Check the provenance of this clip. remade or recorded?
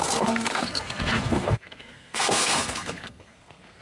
remade